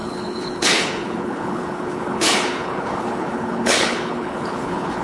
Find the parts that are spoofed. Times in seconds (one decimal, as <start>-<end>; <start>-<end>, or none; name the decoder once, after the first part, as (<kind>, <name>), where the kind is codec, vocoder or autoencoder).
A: 0.0-5.0 (codec, HILCodec)